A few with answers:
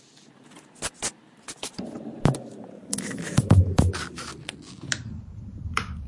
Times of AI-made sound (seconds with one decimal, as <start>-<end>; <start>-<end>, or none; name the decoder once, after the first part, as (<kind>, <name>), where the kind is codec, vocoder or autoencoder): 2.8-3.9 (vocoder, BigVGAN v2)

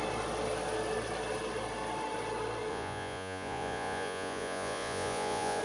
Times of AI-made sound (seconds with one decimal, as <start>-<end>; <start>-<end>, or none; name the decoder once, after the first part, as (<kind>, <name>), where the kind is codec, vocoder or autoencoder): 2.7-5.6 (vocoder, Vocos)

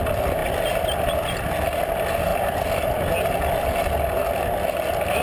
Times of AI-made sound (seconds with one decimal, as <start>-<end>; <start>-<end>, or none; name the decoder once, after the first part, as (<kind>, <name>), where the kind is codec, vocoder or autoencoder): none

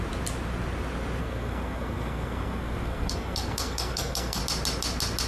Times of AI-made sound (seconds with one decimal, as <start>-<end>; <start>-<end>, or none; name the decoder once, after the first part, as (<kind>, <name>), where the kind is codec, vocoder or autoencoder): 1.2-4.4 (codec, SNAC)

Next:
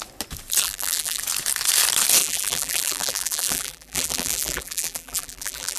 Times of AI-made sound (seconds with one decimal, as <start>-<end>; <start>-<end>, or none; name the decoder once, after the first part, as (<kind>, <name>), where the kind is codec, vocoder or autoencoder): 0.6-1.2 (vocoder, BigVGAN v2); 2.2-5.8

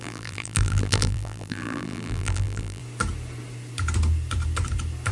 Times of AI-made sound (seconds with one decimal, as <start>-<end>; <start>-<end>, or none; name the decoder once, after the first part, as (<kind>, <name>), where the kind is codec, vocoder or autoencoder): 0.0-2.8 (vocoder, BigVGAN v2)

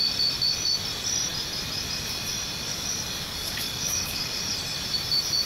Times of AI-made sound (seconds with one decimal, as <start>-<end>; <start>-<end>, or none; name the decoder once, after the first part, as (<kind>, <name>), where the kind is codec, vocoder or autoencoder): 2.7-4.4 (codec, DAC)